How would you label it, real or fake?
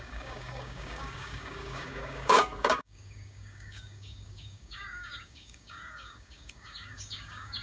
fake